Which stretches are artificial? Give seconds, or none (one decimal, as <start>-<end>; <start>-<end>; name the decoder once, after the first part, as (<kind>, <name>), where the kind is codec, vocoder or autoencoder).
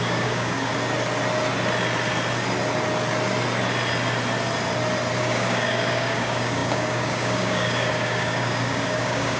0.0-0.7 (codec, DAC); 5.2-9.4